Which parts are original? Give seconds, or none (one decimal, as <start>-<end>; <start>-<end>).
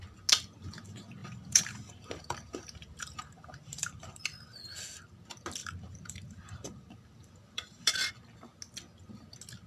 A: 0.0-1.2; 4.2-5.6; 8.1-9.7